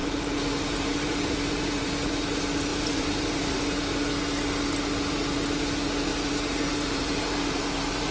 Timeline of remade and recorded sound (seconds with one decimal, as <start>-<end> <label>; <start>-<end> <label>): 0.0-1.9 remade; 1.9-2.7 recorded; 2.7-3.6 remade; 3.6-6.1 recorded; 6.1-8.1 remade